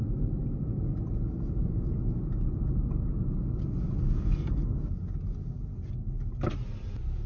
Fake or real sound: real